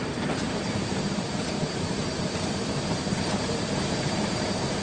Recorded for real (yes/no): no